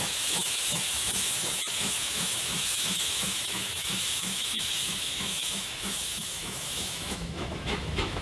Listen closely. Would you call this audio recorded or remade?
remade